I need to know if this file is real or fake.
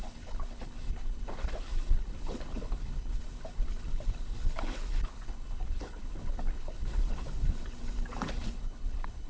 fake